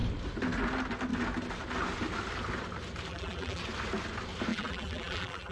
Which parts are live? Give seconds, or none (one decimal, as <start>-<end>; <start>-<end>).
0.0-3.1; 3.6-4.5